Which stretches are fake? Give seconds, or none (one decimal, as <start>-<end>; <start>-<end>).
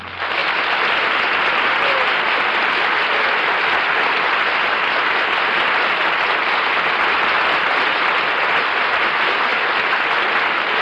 none